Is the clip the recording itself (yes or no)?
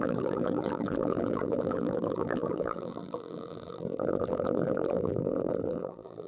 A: no